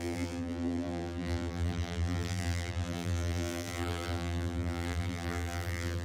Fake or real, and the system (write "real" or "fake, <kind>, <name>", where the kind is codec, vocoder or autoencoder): fake, vocoder, BigVGAN v2